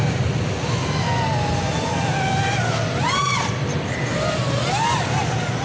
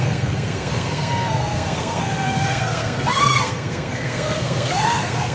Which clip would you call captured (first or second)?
first